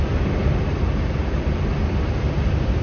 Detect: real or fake real